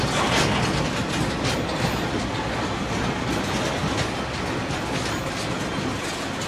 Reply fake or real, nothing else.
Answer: real